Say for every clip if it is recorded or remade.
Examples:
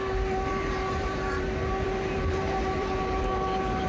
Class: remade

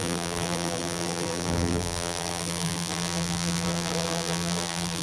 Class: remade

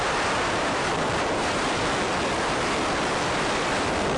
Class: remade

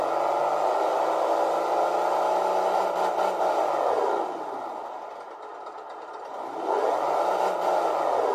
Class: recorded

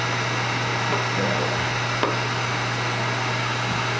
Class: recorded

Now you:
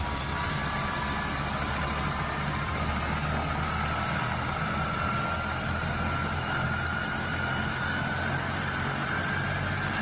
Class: recorded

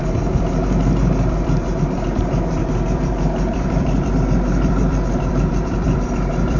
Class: remade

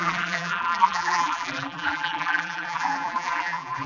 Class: remade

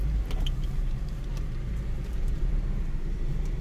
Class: remade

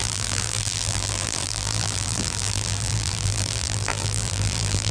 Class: remade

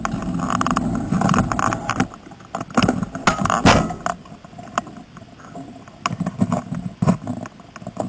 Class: recorded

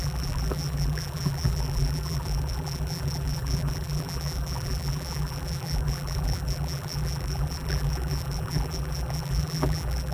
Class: remade